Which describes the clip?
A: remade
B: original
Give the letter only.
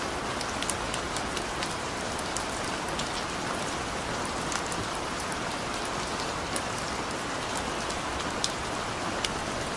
B